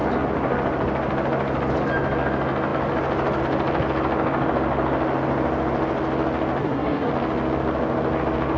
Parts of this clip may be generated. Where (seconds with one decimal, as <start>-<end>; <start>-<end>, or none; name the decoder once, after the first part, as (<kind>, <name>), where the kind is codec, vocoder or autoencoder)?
6.6-7.1 (codec, SNAC)